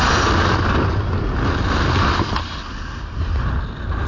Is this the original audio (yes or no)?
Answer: yes